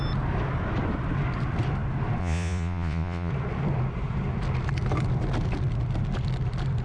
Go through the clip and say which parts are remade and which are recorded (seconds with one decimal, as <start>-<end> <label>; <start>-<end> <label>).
0.0-2.2 recorded; 2.2-3.3 remade; 3.3-6.8 recorded